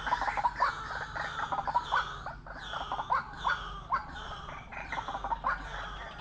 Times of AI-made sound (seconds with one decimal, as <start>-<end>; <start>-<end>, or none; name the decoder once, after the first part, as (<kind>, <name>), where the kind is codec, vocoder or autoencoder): 4.0-4.9 (vocoder, Vocos)